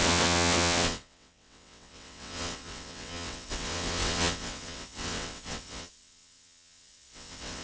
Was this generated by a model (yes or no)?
yes